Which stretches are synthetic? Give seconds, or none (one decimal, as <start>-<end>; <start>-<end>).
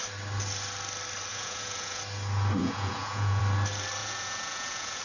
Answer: 1.3-2.0; 2.6-3.4; 4.0-5.0